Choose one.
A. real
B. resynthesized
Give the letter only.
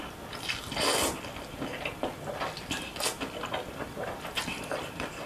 A